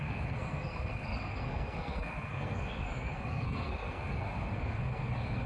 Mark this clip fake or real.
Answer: fake